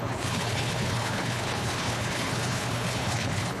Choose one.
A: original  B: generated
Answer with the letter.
B